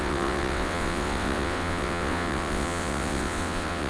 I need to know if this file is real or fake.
fake